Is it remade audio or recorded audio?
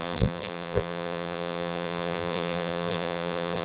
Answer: remade